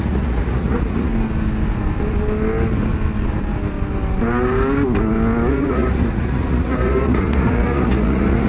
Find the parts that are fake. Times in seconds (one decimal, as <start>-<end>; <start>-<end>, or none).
0.0-1.1; 5.5-8.5